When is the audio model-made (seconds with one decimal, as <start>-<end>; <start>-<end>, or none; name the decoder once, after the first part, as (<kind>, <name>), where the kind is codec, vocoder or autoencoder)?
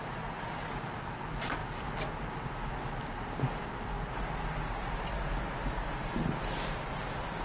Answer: none